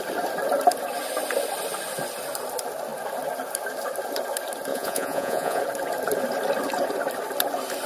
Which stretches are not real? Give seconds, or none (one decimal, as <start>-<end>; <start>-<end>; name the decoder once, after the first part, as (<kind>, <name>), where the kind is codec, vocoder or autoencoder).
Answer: 4.7-5.6 (vocoder, Vocos)